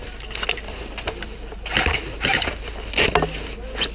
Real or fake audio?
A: real